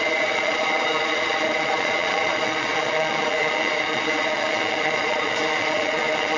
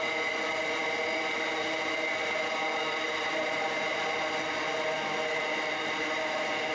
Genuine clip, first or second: second